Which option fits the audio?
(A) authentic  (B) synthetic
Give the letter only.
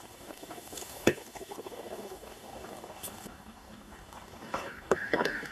B